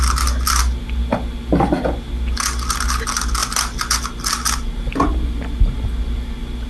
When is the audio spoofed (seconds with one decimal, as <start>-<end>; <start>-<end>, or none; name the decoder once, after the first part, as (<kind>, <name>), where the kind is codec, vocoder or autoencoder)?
none